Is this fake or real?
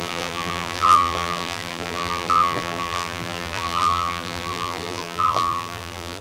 fake